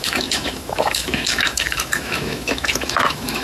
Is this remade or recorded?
remade